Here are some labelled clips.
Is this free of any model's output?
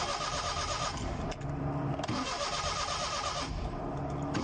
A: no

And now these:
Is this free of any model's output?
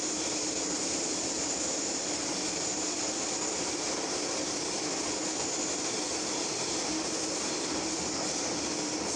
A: yes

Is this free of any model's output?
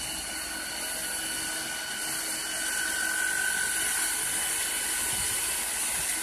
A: yes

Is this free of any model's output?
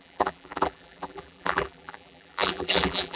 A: no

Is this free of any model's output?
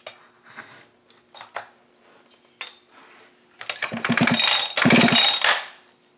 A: yes